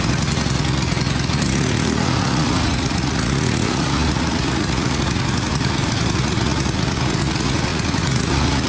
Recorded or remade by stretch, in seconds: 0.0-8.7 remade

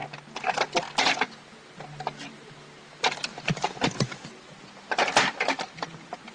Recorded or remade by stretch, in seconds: 0.0-6.3 recorded

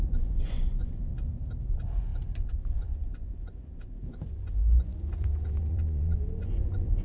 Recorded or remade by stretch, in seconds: 0.0-1.1 remade; 1.1-1.6 recorded; 1.6-7.0 remade